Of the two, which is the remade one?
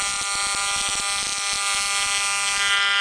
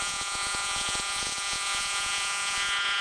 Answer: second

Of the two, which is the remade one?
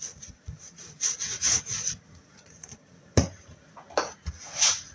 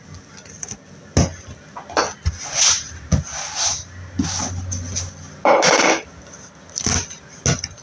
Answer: first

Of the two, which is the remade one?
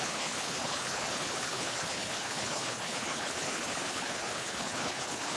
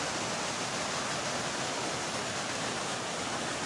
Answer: first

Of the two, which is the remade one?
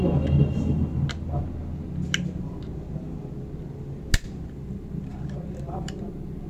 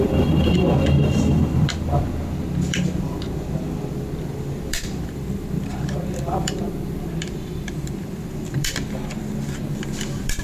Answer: second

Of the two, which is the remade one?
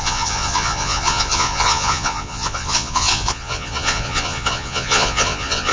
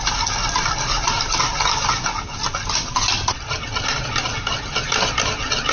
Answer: first